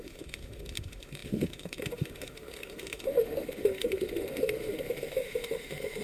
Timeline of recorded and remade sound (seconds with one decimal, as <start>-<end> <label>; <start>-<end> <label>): 0.0-6.0 remade